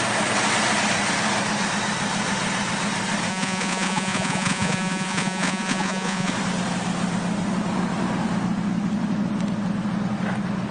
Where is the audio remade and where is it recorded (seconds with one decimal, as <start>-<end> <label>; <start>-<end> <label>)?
0.0-3.3 recorded; 3.3-6.3 remade; 6.3-10.7 recorded